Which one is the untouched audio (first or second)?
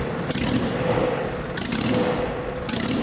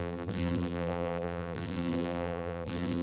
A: first